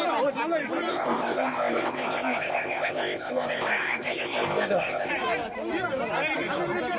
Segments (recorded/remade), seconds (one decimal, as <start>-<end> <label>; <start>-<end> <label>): 0.0-0.9 recorded; 0.9-5.1 remade; 5.1-7.0 recorded